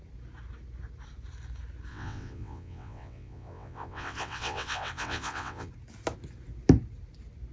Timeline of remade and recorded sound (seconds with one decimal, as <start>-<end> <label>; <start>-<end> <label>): 0.0-1.9 recorded; 1.9-5.7 remade; 5.7-7.5 recorded

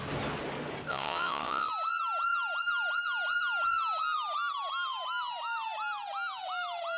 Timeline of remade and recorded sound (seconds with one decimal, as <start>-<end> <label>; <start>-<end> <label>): 0.0-0.9 recorded; 0.9-1.7 remade; 1.7-7.0 recorded

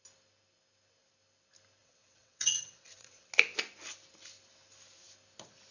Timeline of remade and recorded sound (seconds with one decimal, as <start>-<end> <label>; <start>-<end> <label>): 0.0-1.8 recorded; 1.8-3.3 remade; 3.3-5.7 recorded

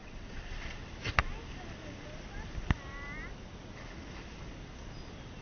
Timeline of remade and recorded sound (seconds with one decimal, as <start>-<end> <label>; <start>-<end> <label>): 0.0-0.9 remade; 0.9-5.4 recorded

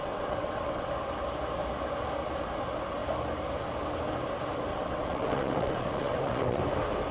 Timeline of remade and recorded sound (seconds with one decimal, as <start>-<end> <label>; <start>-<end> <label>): 0.0-0.9 remade; 0.9-4.7 recorded; 4.7-6.6 remade; 6.6-7.1 recorded